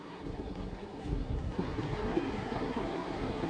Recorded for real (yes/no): no